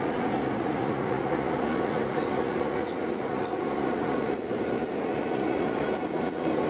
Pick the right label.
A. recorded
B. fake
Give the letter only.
B